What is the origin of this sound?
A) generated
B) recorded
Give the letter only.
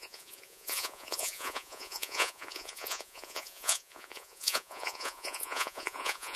A